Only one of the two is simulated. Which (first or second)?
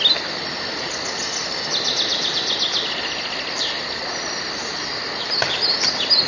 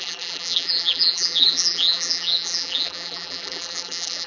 second